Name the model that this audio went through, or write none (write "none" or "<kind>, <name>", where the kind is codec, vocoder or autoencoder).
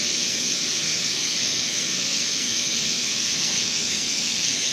codec, SNAC